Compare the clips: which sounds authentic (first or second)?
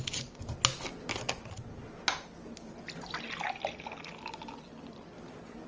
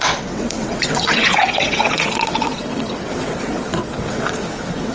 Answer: first